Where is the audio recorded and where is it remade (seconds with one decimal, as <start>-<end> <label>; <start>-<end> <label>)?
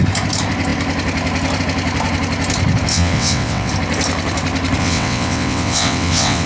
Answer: 0.0-2.9 recorded; 2.9-3.7 remade; 3.7-4.8 recorded; 4.8-6.5 remade